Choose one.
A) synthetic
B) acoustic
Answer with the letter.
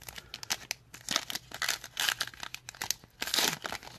B